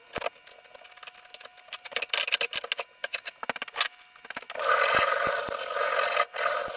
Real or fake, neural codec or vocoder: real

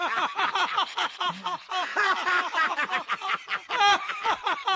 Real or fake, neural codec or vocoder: fake, vocoder, BigVGAN v2